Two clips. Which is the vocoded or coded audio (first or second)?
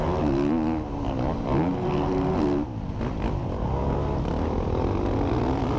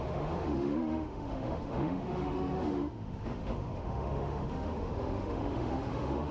second